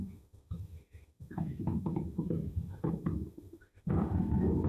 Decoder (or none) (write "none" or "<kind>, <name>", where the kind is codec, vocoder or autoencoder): autoencoder, DAC-VAE